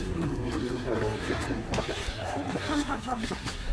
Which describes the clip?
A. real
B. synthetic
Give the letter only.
B